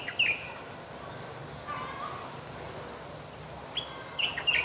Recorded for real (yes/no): yes